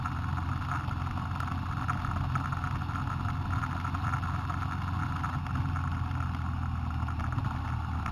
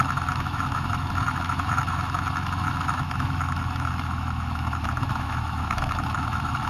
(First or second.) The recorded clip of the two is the first